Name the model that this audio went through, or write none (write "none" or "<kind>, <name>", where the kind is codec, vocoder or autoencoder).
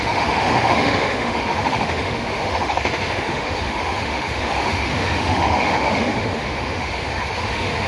autoencoder, DAC-VAE